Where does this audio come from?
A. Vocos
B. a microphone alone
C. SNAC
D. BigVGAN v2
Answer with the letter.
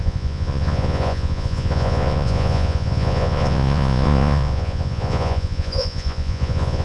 A